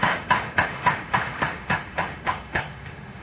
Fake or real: fake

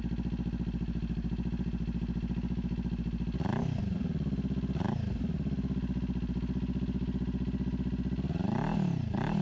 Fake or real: real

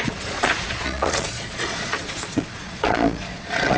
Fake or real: fake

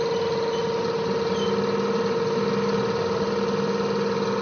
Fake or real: real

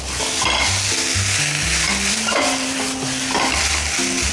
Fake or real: real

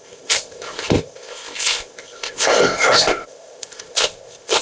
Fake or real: fake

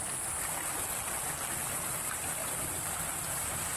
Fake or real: real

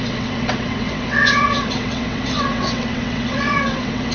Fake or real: fake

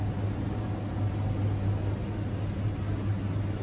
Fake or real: real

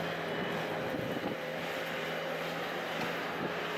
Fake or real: real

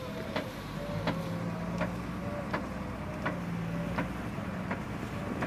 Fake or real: real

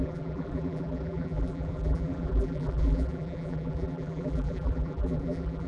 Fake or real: fake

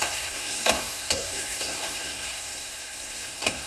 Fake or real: fake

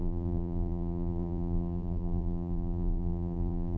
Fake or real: fake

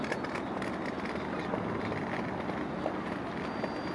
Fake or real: real